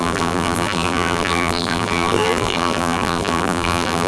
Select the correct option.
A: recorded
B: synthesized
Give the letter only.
B